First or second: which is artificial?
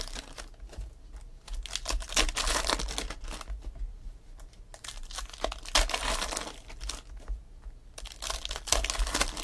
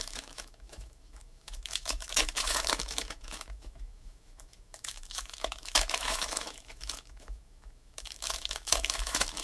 second